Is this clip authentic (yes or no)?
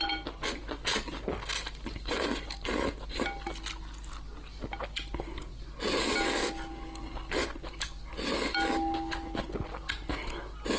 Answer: yes